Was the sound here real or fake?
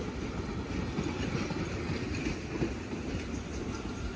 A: real